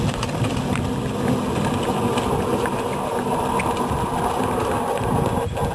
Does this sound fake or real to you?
real